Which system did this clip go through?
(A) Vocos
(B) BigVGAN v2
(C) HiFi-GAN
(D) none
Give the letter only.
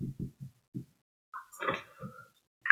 D